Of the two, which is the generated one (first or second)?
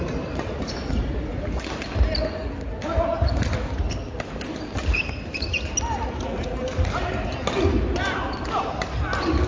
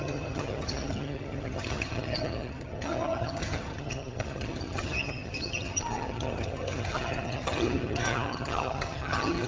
second